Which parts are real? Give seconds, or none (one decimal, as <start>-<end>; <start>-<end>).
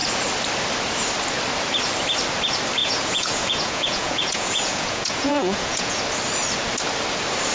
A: 0.0-2.8; 6.0-7.5